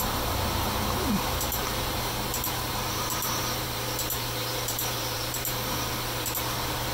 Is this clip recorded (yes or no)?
no